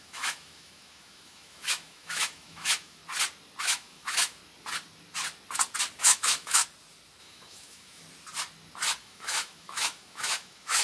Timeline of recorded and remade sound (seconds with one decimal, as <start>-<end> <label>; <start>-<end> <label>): 0.0-3.0 remade; 3.0-3.6 recorded; 3.6-4.4 remade; 4.4-6.0 recorded; 6.0-6.6 remade; 6.6-7.2 recorded; 7.2-8.0 remade; 8.0-9.0 recorded; 9.0-10.8 remade